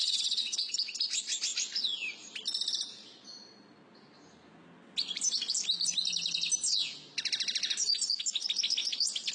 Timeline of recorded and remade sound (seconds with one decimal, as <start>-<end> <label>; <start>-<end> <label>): 0.0-0.7 remade; 0.7-9.3 recorded